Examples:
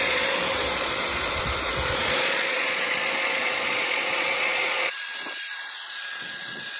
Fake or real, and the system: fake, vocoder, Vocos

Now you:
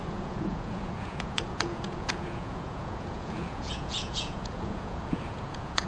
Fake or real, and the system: fake, vocoder, Vocos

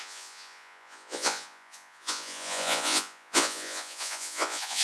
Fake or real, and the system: fake, vocoder, Vocos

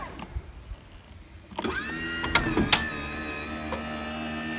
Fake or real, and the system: real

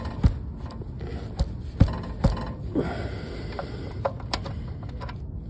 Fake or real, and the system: real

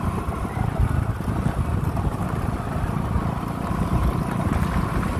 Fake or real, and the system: real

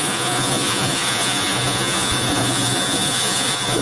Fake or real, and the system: fake, vocoder, Vocos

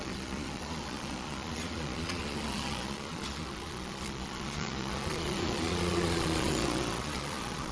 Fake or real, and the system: fake, vocoder, Vocos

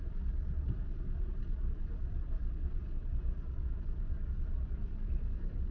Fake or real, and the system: real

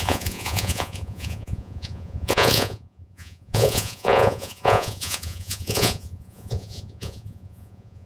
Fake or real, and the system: fake, vocoder, Vocos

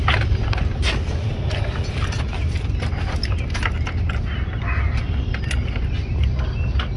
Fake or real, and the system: real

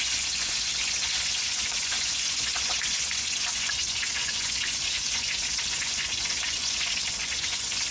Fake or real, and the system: fake, vocoder, Vocos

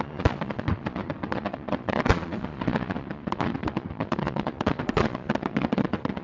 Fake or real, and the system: fake, vocoder, Vocos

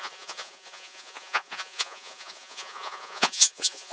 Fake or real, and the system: fake, vocoder, Vocos